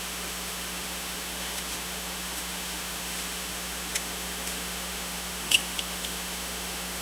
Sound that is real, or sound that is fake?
fake